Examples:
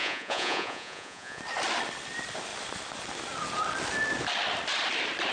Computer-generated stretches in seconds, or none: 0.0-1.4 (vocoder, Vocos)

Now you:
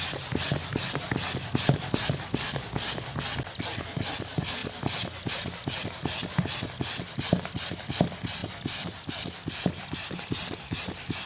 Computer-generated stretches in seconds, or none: none

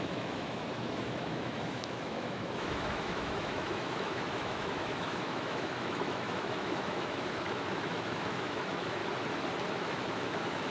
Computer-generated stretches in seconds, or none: 0.0-9.0 (autoencoder, DAC-VAE); 9.7-10.7